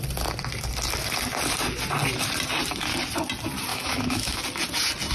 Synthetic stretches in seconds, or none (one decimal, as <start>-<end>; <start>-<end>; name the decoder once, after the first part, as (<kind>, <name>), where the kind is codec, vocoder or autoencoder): 3.7-4.4 (autoencoder, DAC-VAE)